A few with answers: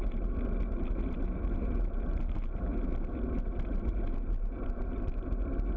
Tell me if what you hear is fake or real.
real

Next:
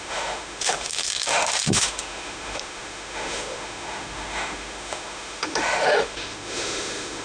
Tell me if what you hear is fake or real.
fake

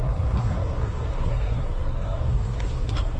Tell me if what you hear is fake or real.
fake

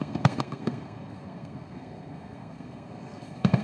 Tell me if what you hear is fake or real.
fake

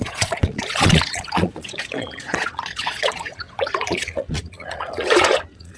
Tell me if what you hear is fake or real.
fake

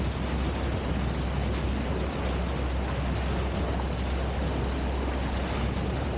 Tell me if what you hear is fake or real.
real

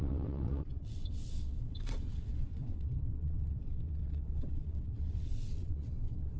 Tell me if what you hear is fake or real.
fake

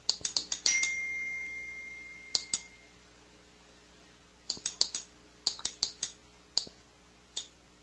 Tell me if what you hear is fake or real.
real